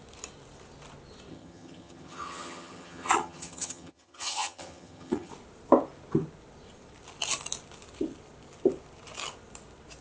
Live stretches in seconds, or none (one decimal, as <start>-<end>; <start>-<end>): 0.0-1.3; 5.3-10.0